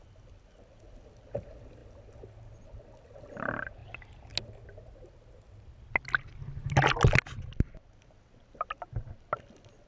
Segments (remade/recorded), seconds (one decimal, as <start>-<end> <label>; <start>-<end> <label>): 0.0-9.9 recorded